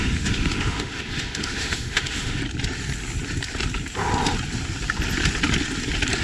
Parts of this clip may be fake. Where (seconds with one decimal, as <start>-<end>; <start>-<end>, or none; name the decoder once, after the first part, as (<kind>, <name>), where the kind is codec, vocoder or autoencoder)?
0.0-2.4 (autoencoder, DAC-VAE)